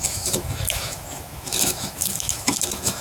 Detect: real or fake fake